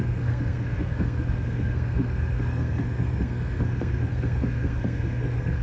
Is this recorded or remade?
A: remade